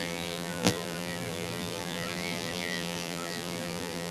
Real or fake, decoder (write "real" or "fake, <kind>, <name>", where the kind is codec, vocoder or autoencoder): fake, vocoder, BigVGAN v2